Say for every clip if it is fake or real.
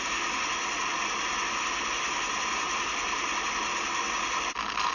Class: real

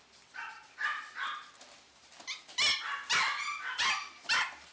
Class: real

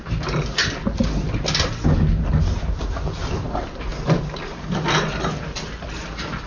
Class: real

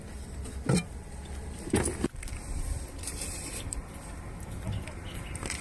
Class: fake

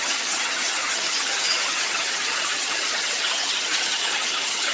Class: fake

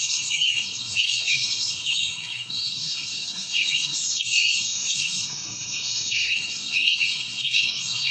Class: fake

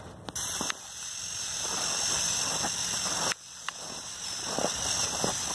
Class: real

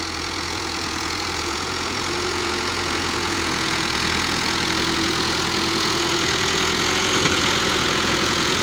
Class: fake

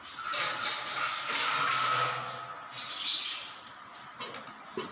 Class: real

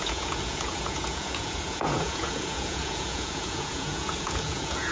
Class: fake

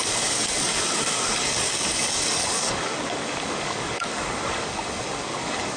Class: fake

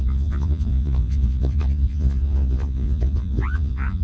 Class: fake